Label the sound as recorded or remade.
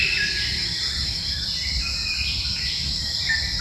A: recorded